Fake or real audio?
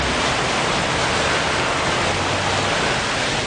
real